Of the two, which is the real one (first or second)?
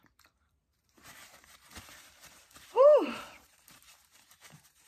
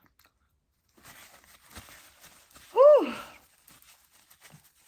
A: second